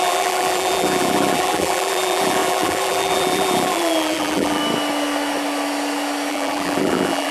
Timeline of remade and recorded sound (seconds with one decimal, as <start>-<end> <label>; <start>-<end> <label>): 0.0-4.6 remade; 4.6-6.3 recorded; 6.3-7.3 remade